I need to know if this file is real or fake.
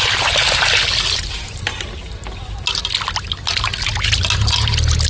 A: real